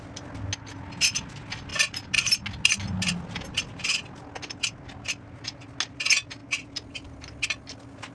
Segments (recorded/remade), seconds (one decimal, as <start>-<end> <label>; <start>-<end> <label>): 0.0-8.1 recorded